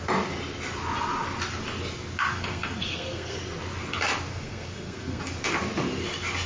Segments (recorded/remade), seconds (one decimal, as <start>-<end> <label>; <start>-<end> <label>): 0.0-2.3 recorded; 2.3-3.4 remade; 3.4-4.3 recorded; 4.3-5.2 remade; 5.2-6.5 recorded